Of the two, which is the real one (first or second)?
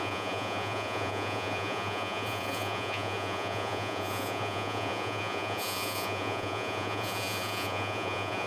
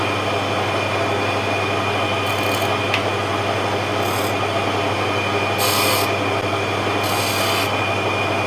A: second